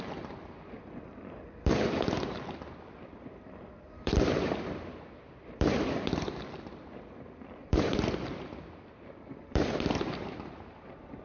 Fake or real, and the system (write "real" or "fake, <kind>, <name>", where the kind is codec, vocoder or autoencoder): fake, vocoder, BigVGAN v2